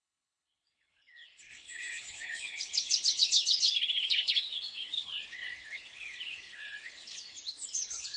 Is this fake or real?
fake